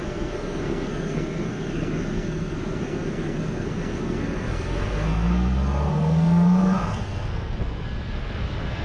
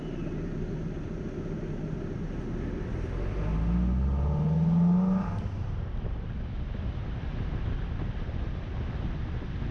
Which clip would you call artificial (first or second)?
first